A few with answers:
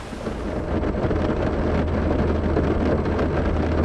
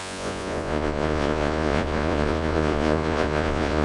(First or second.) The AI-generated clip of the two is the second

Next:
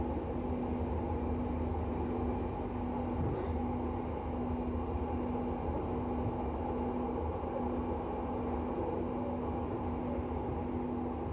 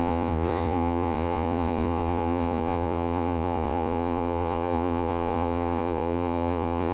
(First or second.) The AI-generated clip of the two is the second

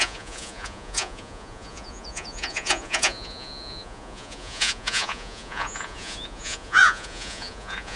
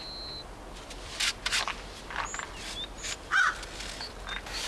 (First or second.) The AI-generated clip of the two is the first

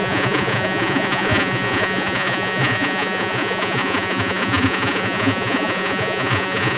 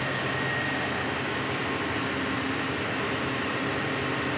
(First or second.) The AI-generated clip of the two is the first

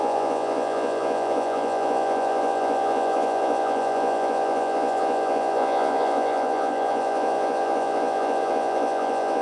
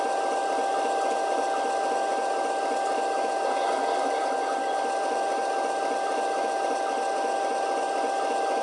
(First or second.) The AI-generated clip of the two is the first